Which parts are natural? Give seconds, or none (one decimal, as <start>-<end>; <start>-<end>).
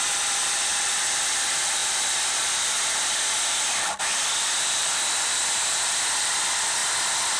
none